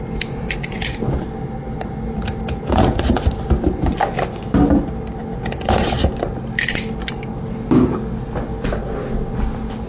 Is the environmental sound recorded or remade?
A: recorded